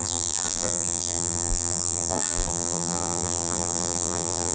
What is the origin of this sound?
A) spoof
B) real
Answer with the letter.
A